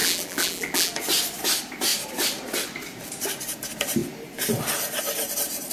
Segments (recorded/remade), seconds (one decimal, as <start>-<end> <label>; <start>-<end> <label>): 0.0-0.9 remade; 0.9-5.7 recorded